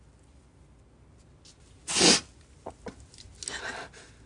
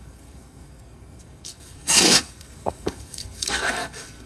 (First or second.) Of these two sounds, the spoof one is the second